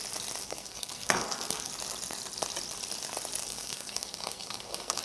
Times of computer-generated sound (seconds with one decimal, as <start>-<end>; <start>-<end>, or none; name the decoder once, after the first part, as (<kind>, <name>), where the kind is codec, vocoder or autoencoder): 0.4-1.7 (codec, SNAC); 3.4-5.0